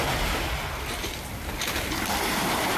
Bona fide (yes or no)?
yes